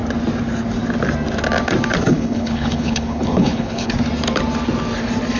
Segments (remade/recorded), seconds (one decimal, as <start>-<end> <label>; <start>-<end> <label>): 0.0-2.0 recorded; 2.0-3.9 remade; 3.9-5.4 recorded